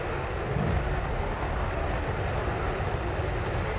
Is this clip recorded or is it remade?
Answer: recorded